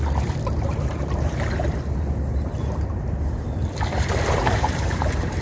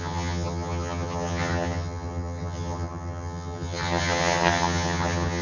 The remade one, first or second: second